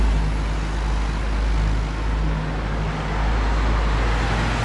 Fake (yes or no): no